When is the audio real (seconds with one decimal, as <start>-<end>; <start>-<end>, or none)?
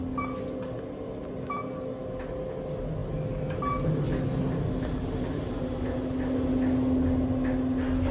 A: 0.0-8.1